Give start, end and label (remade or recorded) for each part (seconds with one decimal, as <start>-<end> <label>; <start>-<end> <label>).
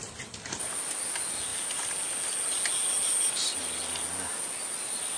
0.0-5.2 recorded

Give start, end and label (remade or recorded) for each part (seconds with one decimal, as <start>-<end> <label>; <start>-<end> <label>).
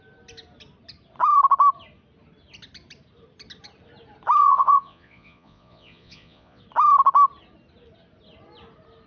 0.0-4.4 recorded; 4.4-6.6 remade; 6.6-9.1 recorded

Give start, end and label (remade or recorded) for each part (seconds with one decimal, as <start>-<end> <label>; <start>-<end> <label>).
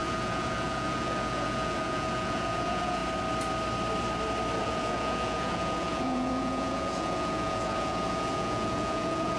0.0-3.0 remade; 3.0-4.6 recorded; 4.6-9.4 remade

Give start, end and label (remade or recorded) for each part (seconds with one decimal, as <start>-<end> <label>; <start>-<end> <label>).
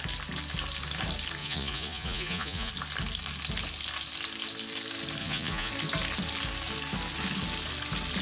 0.0-1.4 recorded; 1.4-2.7 remade; 2.7-5.2 recorded; 5.2-5.7 remade; 5.7-8.2 recorded